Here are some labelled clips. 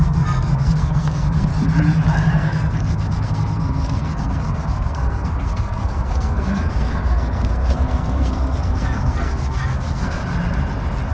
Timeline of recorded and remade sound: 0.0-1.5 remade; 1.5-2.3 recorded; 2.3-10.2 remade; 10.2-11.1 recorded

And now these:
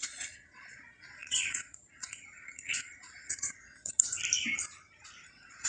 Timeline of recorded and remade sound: 0.0-4.1 remade; 4.1-5.3 recorded; 5.3-5.7 remade

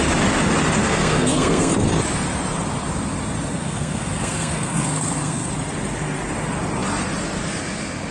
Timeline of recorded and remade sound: 0.0-0.8 recorded; 0.8-1.7 remade; 1.7-3.6 recorded; 3.6-5.5 remade; 5.5-8.1 recorded

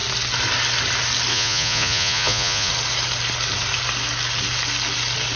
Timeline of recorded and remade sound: 0.0-1.3 recorded; 1.3-2.7 remade; 2.7-5.4 recorded

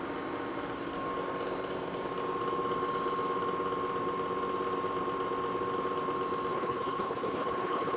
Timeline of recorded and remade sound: 0.0-6.5 recorded; 6.5-8.0 remade

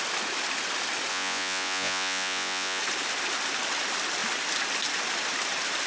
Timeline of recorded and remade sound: 0.0-1.1 recorded; 1.1-2.8 remade; 2.8-5.9 recorded